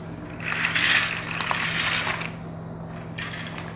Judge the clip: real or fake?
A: real